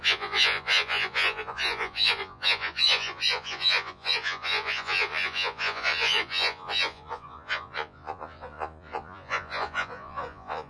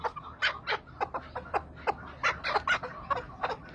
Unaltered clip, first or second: second